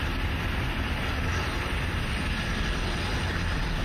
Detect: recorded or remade recorded